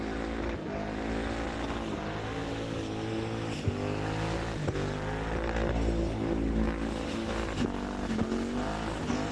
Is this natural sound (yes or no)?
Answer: yes